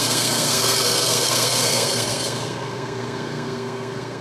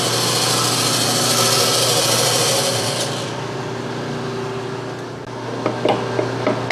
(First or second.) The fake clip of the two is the first